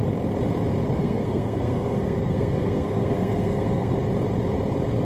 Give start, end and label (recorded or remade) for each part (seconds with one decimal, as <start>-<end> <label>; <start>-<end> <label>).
0.0-0.9 recorded; 0.9-3.9 remade; 3.9-5.0 recorded